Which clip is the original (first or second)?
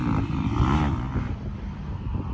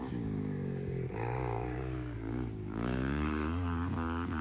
first